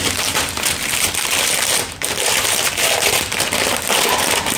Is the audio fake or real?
fake